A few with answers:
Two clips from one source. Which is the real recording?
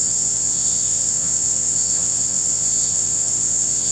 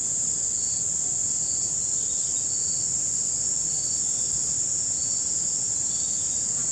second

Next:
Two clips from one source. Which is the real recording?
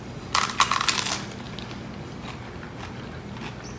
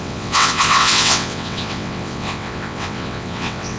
first